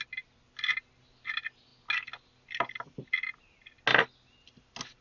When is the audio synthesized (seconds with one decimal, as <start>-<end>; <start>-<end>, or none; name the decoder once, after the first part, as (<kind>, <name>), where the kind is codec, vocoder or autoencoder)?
none